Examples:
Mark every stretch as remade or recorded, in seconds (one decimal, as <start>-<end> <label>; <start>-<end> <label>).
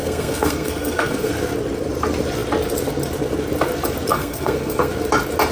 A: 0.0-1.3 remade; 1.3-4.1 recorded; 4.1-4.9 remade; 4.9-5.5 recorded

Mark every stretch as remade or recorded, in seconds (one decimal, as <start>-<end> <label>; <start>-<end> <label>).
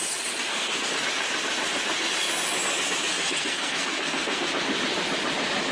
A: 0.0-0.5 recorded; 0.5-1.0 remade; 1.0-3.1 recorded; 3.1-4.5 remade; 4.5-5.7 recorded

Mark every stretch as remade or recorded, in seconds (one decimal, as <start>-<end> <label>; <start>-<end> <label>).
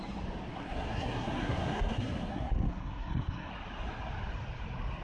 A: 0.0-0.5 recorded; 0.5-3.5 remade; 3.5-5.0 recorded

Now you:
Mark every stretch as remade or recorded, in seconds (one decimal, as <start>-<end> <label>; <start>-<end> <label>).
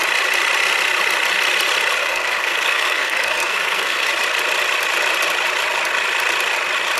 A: 0.0-2.0 recorded; 2.0-4.1 remade; 4.1-7.0 recorded